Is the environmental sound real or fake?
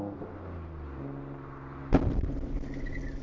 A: real